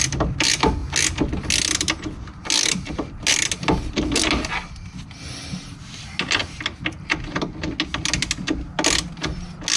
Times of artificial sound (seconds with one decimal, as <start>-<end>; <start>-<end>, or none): none